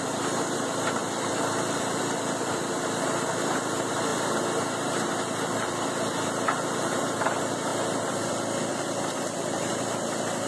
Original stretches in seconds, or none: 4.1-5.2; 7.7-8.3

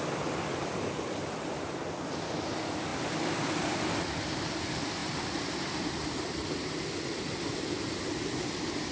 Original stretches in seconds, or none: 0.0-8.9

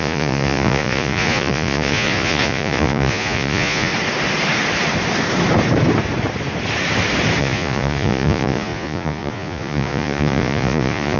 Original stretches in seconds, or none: 3.9-7.4

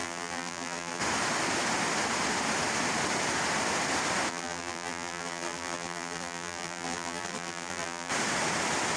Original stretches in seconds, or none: 1.0-4.3; 8.1-9.0